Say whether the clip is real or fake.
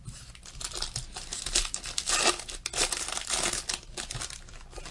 real